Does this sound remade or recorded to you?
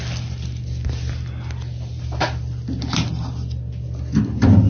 recorded